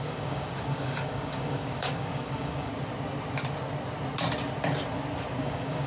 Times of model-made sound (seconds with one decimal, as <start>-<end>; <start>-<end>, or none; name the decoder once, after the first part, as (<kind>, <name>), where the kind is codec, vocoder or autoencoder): 0.0-2.7 (codec, DAC); 5.4-5.9